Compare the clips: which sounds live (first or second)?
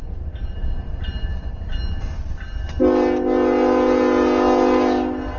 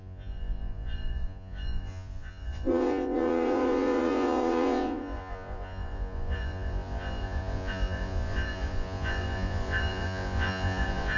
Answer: first